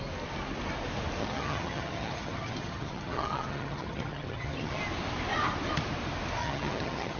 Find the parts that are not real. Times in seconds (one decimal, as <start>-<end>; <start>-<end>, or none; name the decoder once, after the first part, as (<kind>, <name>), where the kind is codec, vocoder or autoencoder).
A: 1.2-4.8 (vocoder, HiFi-GAN); 6.4-7.2